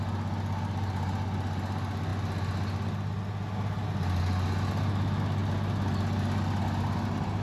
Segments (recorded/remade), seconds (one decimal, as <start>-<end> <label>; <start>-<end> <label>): 0.0-7.4 recorded